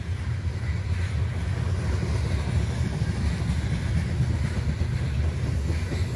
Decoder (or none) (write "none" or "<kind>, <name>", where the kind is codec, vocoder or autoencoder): none